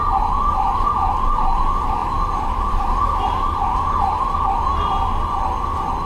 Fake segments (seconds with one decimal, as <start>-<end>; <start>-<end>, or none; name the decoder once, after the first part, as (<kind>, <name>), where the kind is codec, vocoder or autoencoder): 0.0-4.7 (vocoder, BigVGAN v2)